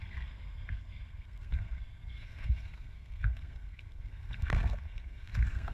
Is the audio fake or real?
fake